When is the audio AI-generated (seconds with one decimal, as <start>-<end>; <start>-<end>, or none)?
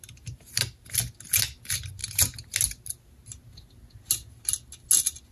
none